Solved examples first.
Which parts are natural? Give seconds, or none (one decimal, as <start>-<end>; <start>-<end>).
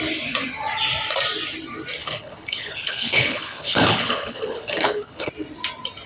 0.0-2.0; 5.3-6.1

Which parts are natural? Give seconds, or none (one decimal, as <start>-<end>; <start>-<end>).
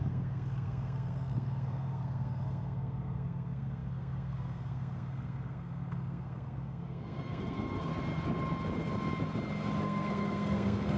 7.9-9.8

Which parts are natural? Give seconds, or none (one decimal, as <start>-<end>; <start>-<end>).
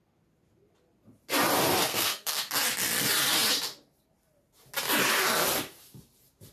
0.0-1.9; 2.5-6.5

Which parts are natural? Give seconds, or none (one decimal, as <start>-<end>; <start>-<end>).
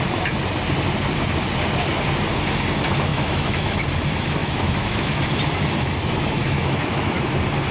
0.0-3.1; 3.8-4.4; 5.2-6.4; 7.2-7.7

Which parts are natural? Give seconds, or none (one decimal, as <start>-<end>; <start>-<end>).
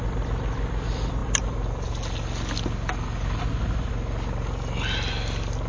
0.0-5.7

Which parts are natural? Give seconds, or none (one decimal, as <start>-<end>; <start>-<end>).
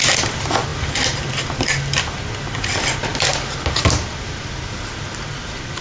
0.0-5.8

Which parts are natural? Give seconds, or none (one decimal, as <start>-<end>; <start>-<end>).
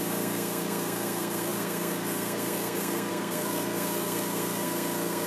none